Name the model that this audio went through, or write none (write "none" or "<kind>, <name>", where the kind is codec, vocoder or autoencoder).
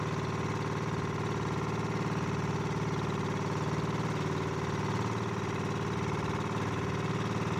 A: none